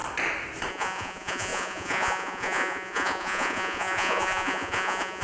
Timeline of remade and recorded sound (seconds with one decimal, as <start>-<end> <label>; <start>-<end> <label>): 0.0-0.7 recorded; 0.7-5.2 remade